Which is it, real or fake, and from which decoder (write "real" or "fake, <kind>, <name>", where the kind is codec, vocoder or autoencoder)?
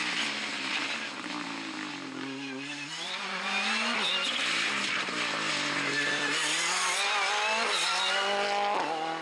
real